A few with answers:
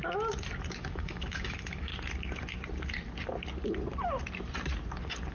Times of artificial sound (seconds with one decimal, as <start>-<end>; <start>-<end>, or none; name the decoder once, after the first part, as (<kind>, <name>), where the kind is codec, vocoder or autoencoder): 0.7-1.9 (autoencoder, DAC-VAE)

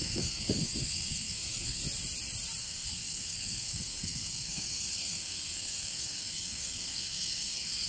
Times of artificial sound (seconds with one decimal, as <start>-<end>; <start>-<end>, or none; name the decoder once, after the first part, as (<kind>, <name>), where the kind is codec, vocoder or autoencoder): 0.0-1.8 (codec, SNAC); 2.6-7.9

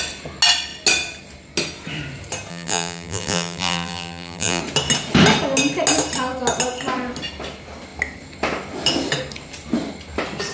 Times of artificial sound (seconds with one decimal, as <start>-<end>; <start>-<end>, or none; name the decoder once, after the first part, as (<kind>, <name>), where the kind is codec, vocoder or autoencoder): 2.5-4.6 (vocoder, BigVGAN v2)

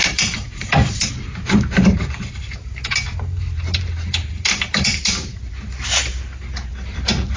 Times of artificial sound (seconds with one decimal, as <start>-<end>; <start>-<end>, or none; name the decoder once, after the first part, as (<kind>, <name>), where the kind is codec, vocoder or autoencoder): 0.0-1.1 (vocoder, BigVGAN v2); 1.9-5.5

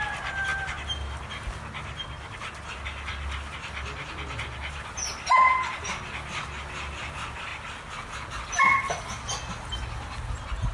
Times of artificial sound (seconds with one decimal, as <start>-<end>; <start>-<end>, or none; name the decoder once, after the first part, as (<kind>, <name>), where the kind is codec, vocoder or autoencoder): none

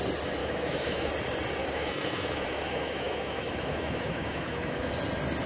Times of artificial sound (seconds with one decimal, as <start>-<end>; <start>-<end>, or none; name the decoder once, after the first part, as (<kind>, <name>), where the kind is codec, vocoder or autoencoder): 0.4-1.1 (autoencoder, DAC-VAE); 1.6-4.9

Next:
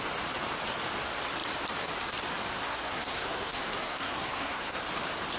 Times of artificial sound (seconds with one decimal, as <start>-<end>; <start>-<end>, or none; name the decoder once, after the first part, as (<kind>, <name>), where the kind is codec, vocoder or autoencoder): 2.7-4.8 (codec, SNAC)

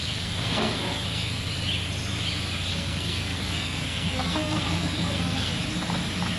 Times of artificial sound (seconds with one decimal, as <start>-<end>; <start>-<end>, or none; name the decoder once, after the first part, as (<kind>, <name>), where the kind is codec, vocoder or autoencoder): 0.0-1.5 (codec, SNAC); 2.7-5.5